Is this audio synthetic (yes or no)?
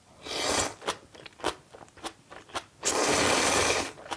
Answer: no